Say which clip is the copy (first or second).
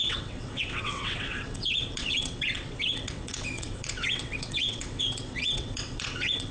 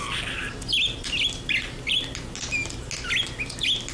first